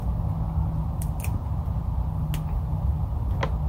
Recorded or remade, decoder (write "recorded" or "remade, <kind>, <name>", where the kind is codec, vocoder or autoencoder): recorded